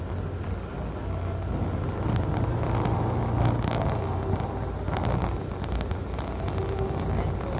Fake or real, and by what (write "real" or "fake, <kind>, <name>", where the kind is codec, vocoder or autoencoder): real